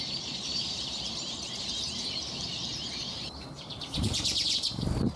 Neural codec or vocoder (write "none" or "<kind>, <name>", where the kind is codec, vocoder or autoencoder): vocoder, BigVGAN v2